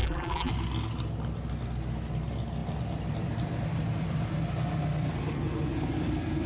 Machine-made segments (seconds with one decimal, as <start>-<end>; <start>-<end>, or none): 0.0-0.5